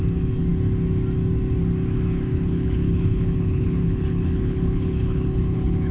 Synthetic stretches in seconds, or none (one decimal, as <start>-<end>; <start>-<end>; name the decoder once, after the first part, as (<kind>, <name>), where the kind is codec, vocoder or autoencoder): 2.3-5.9 (codec, HILCodec)